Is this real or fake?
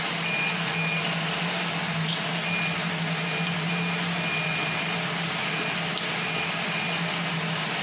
real